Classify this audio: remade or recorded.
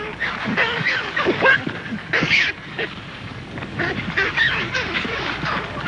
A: remade